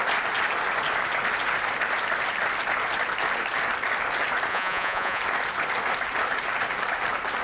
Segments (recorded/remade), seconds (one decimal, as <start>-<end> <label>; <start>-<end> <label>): 0.0-4.5 recorded; 4.5-5.2 remade; 5.2-7.4 recorded